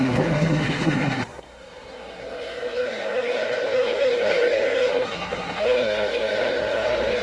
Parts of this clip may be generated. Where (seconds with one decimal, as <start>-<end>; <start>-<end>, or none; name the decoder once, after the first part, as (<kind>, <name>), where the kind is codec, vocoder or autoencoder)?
0.0-7.2 (codec, SNAC)